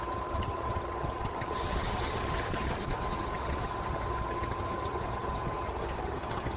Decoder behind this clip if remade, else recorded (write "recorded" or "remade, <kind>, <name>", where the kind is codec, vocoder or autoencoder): remade, vocoder, HiFi-GAN